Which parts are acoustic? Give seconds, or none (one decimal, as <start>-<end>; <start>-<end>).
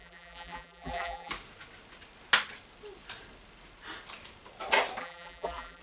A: 1.3-5.0